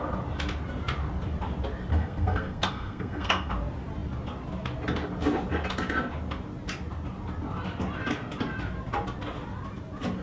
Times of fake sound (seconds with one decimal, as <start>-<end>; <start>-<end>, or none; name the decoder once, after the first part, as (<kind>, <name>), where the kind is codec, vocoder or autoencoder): 1.9-3.5 (codec, SNAC)

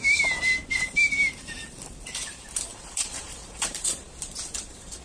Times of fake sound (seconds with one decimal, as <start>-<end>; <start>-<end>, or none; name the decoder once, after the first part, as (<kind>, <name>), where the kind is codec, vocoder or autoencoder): 0.7-5.0 (vocoder, BigVGAN v2)

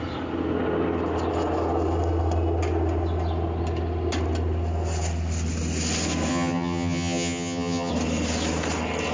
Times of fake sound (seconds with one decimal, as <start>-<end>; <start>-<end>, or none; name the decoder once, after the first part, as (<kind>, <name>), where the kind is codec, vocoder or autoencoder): 6.3-7.9 (vocoder, HiFi-GAN)

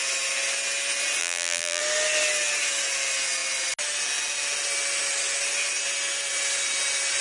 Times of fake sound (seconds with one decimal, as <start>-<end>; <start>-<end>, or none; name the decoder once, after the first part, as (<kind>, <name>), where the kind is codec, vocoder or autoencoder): 1.2-1.8 (vocoder, BigVGAN v2)